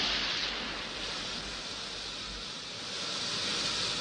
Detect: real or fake real